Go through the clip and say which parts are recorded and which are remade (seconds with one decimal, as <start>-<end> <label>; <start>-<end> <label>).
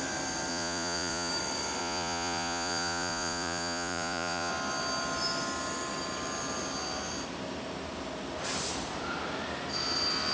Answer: 0.0-0.5 recorded; 0.5-1.3 remade; 1.3-1.8 recorded; 1.8-4.5 remade; 4.5-10.3 recorded